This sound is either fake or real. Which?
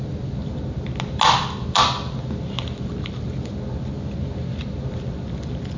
real